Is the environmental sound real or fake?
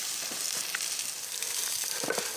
real